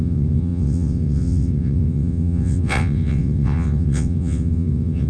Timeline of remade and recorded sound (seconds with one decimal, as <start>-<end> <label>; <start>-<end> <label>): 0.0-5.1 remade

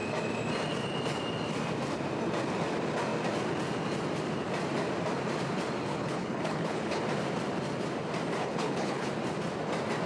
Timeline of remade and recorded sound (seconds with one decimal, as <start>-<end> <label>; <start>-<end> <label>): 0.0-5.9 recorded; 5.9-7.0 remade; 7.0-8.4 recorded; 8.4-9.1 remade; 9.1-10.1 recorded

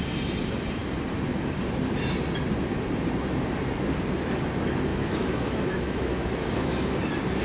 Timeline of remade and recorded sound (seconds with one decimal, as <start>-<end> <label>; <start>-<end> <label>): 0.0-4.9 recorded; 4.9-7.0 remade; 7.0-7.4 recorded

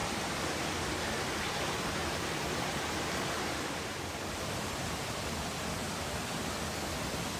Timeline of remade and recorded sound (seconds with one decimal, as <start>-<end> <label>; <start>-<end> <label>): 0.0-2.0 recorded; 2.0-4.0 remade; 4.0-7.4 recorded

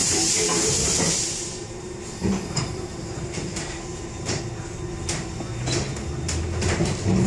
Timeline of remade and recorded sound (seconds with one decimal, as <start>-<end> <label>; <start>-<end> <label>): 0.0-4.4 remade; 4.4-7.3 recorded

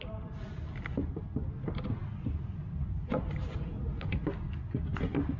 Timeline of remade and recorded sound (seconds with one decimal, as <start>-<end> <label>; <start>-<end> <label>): 0.0-5.4 recorded

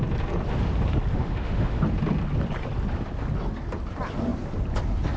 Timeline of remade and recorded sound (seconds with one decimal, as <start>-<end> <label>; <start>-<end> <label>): 0.0-1.1 recorded; 1.1-1.8 remade; 1.8-5.2 recorded